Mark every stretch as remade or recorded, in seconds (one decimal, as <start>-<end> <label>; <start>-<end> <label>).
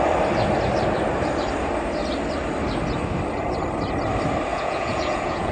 0.0-4.5 recorded; 4.5-5.5 remade